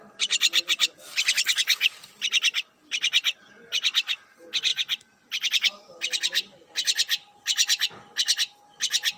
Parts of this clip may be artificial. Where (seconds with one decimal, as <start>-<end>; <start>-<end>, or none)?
none